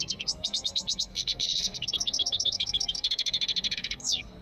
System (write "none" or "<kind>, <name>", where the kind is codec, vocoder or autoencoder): codec, SNAC